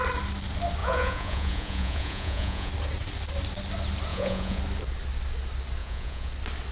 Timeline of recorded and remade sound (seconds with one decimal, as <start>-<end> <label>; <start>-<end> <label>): 0.0-0.8 recorded; 0.8-2.7 remade; 2.7-4.1 recorded; 4.1-4.6 remade; 4.6-5.8 recorded; 5.8-6.3 remade; 6.3-6.7 recorded